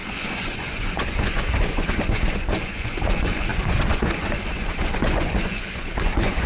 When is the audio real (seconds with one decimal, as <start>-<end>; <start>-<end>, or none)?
none